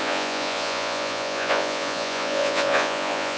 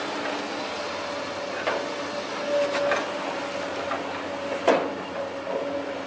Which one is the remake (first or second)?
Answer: first